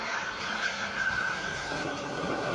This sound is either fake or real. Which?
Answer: fake